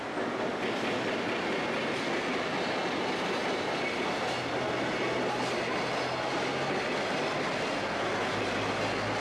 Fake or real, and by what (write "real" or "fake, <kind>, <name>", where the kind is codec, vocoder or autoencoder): real